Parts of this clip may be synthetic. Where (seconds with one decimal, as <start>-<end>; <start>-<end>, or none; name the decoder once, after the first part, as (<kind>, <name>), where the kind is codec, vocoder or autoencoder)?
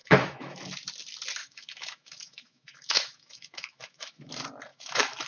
0.0-0.6 (autoencoder, DAC-VAE); 1.4-4.3; 4.7-5.3